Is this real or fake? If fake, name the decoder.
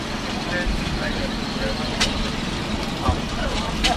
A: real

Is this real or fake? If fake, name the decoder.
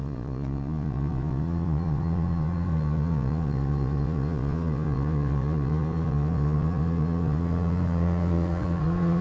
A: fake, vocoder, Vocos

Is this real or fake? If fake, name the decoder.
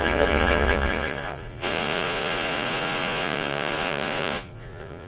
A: fake, vocoder, Vocos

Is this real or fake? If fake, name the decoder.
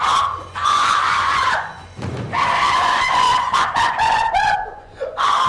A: fake, vocoder, Vocos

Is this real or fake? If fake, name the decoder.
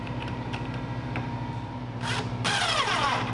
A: fake, vocoder, BigVGAN v2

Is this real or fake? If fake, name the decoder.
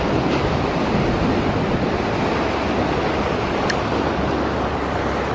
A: real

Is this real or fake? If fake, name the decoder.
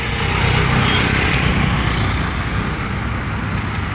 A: real